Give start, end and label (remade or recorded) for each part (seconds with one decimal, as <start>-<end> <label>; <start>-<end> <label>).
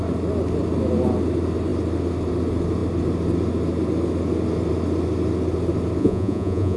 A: 0.0-6.0 recorded; 6.0-6.8 remade